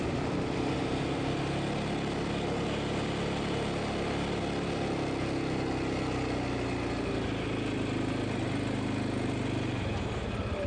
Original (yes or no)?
yes